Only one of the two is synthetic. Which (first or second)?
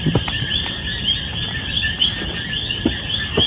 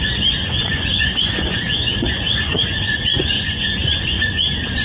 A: second